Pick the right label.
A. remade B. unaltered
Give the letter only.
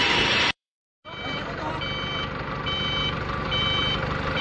A